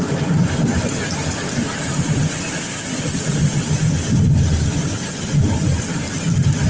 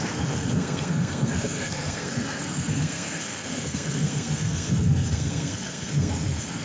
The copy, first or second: second